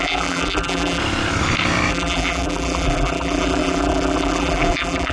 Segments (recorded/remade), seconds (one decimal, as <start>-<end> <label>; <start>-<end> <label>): 0.0-1.0 remade; 1.0-1.9 recorded; 1.9-5.1 remade